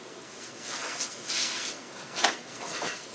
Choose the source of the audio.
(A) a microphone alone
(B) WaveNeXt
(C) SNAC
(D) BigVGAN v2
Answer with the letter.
C